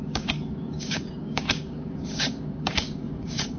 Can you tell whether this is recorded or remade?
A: remade